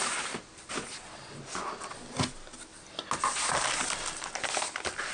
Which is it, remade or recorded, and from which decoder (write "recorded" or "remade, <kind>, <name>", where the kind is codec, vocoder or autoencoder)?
recorded